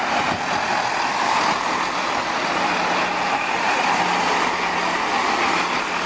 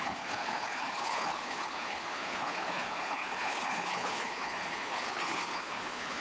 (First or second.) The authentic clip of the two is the first